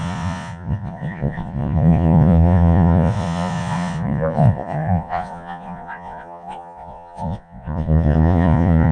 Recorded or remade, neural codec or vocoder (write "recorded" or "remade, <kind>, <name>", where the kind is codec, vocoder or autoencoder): remade, vocoder, Vocos